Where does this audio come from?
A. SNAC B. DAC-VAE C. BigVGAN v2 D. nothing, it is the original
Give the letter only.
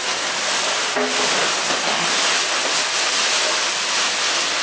D